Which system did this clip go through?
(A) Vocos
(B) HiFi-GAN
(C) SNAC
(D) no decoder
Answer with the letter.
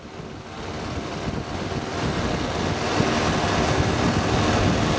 D